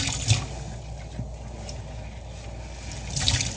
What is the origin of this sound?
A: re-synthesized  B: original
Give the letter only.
B